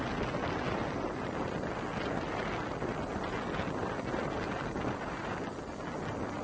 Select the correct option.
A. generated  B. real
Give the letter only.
B